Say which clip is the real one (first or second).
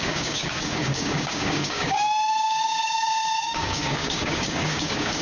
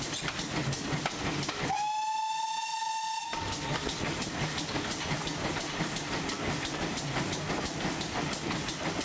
second